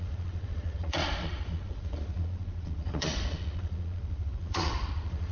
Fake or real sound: fake